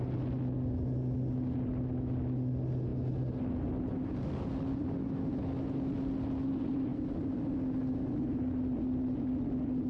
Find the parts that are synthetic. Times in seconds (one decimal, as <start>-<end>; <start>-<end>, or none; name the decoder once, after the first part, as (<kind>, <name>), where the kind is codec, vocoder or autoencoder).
none